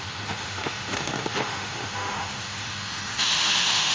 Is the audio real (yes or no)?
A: no